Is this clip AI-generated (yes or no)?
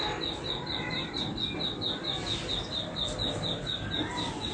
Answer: no